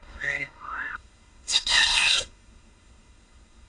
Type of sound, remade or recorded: remade